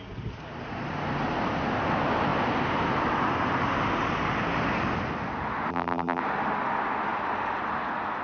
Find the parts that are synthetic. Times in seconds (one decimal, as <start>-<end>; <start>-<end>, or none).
5.7-6.2